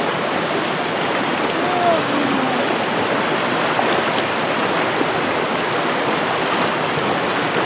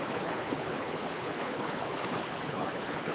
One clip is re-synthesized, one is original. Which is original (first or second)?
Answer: first